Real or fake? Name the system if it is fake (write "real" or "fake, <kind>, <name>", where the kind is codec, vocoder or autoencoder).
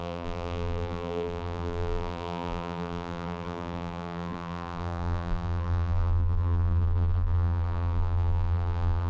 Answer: fake, vocoder, BigVGAN v2